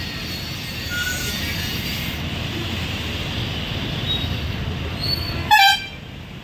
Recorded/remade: recorded